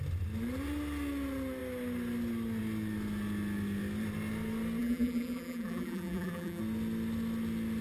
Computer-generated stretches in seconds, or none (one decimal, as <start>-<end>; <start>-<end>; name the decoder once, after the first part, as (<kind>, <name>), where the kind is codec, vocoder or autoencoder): 4.8-6.6 (vocoder, BigVGAN v2)